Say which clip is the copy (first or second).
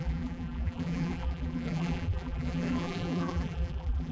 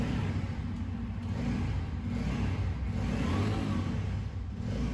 first